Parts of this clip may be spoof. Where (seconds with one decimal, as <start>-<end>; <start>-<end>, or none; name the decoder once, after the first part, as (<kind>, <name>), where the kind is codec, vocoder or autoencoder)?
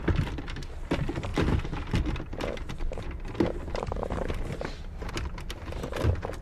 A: none